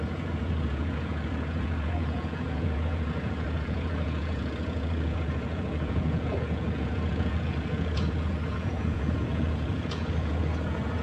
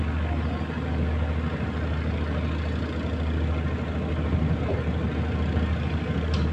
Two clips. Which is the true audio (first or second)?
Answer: second